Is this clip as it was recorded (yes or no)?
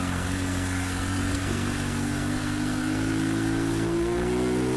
no